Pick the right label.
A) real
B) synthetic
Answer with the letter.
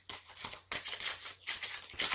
B